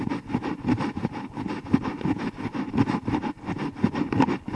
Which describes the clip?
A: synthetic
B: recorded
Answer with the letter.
B